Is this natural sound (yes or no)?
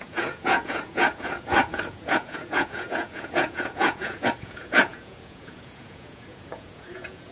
no